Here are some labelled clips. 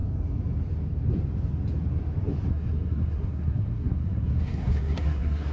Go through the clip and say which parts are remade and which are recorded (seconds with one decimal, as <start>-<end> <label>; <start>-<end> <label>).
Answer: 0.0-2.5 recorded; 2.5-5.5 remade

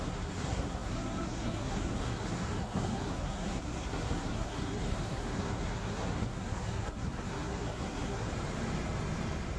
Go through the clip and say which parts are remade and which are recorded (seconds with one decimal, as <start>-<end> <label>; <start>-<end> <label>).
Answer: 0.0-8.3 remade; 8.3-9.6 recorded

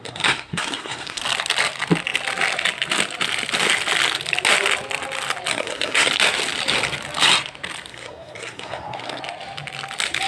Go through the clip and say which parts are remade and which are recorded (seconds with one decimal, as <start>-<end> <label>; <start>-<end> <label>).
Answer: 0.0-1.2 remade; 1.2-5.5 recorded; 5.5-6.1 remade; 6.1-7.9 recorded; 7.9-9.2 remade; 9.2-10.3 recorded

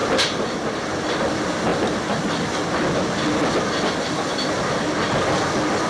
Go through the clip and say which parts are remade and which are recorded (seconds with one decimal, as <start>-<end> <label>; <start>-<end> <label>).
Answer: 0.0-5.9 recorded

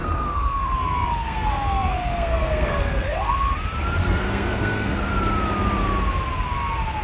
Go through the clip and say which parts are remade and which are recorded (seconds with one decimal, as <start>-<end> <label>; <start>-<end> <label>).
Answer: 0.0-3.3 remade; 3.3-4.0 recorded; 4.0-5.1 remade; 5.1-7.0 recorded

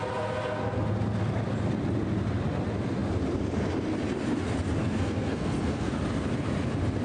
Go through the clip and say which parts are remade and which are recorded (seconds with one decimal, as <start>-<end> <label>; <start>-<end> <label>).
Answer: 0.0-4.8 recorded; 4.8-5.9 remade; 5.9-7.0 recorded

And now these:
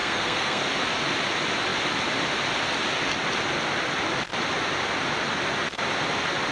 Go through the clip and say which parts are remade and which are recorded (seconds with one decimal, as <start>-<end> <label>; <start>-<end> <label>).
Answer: 0.0-0.6 remade; 0.6-6.5 recorded